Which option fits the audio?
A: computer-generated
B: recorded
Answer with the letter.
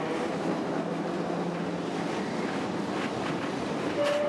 B